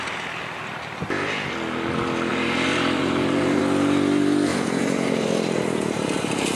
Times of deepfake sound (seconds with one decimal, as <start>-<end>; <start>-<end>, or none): 2.3-3.6; 4.5-6.6